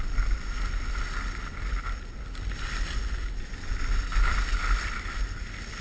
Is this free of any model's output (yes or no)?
yes